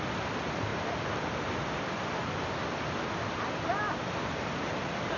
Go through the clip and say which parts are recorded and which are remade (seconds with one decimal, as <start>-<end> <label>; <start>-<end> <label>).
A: 0.0-5.2 recorded